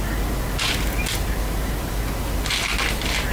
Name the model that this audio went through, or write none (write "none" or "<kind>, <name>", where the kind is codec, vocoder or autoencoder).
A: none